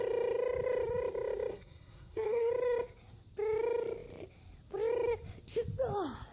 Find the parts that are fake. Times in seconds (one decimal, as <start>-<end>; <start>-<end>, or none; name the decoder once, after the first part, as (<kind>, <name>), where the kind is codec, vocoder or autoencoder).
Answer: 1.5-2.5 (codec, SNAC)